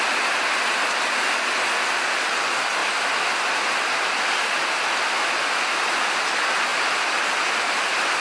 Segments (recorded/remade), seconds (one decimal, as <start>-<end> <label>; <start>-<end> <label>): 0.0-8.2 recorded